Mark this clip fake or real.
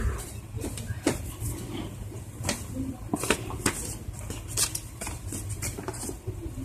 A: fake